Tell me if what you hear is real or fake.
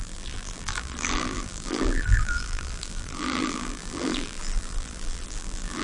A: fake